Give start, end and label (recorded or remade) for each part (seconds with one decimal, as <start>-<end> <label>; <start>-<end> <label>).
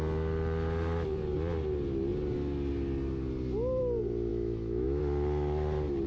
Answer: 0.0-4.3 recorded; 4.3-5.0 remade; 5.0-6.1 recorded